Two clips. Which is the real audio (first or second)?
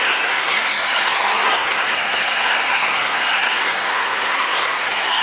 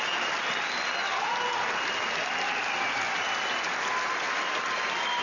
second